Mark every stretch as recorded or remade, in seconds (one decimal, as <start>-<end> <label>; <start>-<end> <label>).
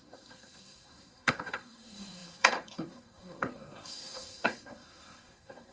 0.0-5.7 remade